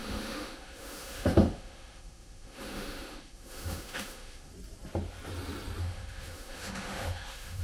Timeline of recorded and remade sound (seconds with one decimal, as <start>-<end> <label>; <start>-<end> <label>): 0.0-4.5 remade; 4.5-5.8 recorded; 5.8-7.6 remade